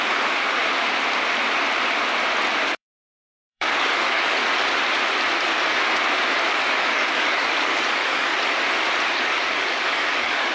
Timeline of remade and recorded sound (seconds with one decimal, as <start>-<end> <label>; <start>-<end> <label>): 0.0-0.6 remade; 0.6-2.6 recorded; 2.6-4.4 remade; 4.4-6.5 recorded; 6.5-8.3 remade; 8.3-9.1 recorded; 9.1-10.5 remade